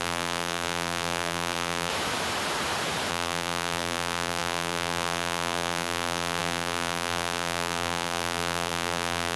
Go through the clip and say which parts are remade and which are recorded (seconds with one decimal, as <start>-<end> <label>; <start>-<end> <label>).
0.0-1.9 remade; 1.9-3.1 recorded; 3.1-9.4 remade